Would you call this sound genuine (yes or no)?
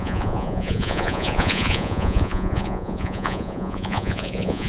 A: no